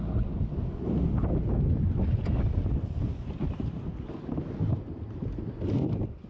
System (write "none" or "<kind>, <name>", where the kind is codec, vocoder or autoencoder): none